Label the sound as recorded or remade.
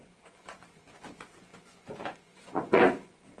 remade